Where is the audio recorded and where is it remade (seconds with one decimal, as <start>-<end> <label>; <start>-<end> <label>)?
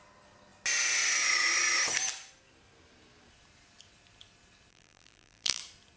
0.0-4.7 recorded; 4.7-5.6 remade; 5.6-6.0 recorded